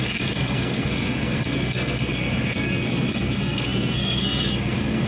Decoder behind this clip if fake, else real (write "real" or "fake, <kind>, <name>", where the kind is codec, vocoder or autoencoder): fake, codec, SNAC